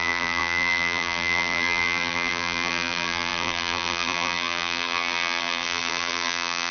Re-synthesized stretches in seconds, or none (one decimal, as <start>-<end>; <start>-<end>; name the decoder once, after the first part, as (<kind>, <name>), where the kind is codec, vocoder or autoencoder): 0.0-6.7 (vocoder, BigVGAN v2)